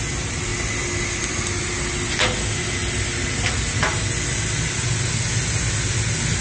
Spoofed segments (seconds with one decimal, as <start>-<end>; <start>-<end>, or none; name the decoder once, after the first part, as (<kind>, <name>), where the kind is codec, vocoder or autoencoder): none